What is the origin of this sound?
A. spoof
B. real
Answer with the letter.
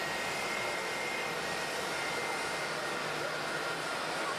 B